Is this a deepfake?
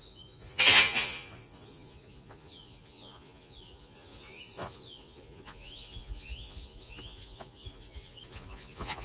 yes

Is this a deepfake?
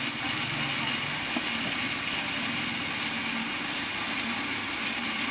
no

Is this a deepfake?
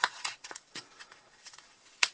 yes